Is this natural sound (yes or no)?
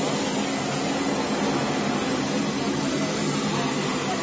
yes